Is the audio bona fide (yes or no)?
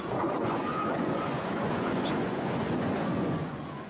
no